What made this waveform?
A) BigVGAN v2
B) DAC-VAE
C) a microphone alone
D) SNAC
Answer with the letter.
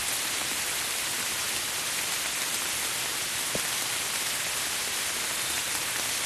C